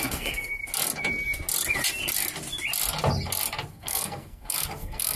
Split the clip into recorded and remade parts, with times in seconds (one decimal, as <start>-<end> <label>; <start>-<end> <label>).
0.0-0.6 remade; 0.6-3.7 recorded; 3.7-5.2 remade